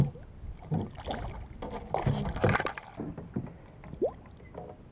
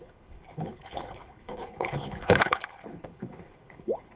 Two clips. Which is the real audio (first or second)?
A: first